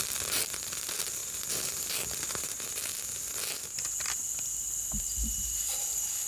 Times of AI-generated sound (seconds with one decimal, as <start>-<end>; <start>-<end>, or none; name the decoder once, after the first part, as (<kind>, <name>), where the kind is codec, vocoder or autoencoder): 0.0-1.2 (vocoder, BigVGAN v2); 5.0-6.3